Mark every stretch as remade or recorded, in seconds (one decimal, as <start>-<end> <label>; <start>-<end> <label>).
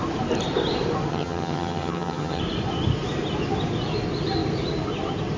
0.0-1.1 recorded; 1.1-2.4 remade; 2.4-5.4 recorded